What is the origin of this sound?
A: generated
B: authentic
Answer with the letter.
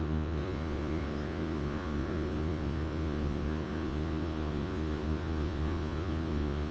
A